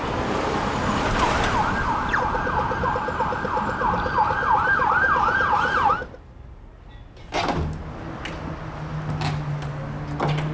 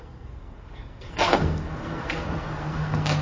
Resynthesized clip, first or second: second